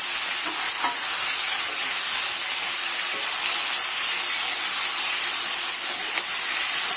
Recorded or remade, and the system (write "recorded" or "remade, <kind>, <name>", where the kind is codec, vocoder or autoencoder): recorded